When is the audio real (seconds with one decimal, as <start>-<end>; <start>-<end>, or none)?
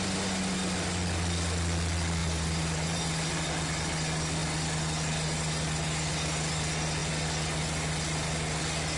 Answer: 0.0-2.2; 3.1-9.0